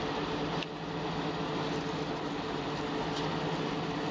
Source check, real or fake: real